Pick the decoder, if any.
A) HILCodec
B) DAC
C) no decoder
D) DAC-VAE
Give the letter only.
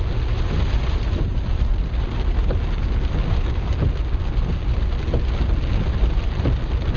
C